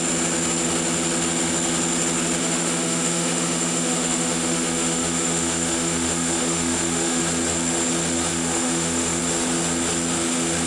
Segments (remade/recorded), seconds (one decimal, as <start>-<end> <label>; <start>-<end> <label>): 0.0-2.4 recorded; 2.4-7.2 remade; 7.2-8.3 recorded; 8.3-9.2 remade; 9.2-10.7 recorded